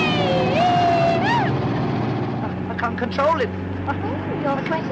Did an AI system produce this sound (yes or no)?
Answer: no